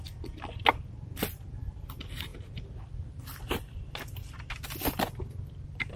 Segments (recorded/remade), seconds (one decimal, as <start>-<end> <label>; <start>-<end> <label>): 0.0-6.0 recorded